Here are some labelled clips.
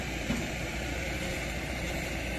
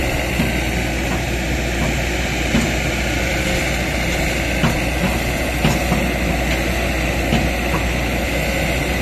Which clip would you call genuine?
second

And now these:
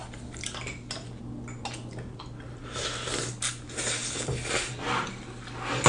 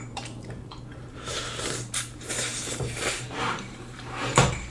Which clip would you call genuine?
first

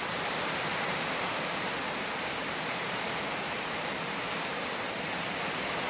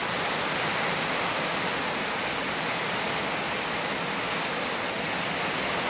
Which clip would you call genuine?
second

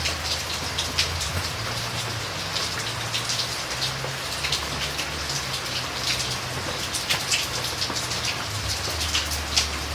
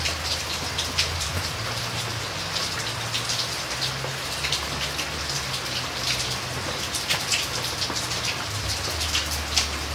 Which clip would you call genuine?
first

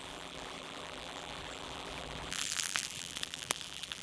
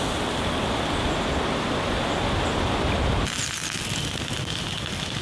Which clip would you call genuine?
second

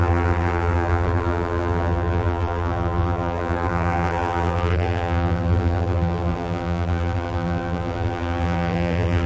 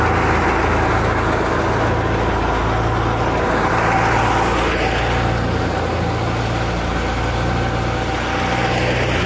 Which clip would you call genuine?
second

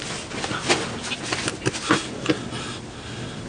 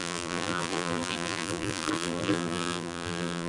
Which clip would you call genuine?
first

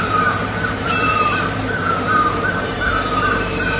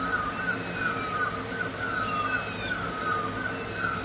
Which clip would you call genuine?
second